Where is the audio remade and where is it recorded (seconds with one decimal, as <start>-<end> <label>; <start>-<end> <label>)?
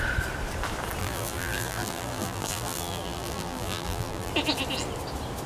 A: 0.0-1.0 recorded; 1.0-4.3 remade; 4.3-5.5 recorded